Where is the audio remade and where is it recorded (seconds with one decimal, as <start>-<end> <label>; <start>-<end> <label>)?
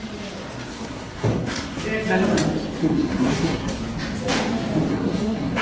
0.0-0.7 recorded; 0.7-1.8 remade; 1.8-2.8 recorded; 2.8-3.8 remade; 3.8-4.9 recorded; 4.9-5.6 remade